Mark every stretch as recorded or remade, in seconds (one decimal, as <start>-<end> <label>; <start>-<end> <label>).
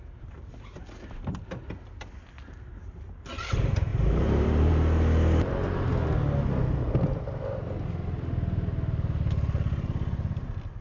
0.0-3.9 recorded; 3.9-4.7 remade; 4.7-10.8 recorded